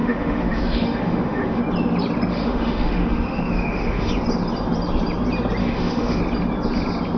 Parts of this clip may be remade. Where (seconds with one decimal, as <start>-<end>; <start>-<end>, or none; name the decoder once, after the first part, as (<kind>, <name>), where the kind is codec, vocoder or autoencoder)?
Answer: 0.0-1.6 (autoencoder, DAC-VAE); 2.3-4.1; 5.6-6.2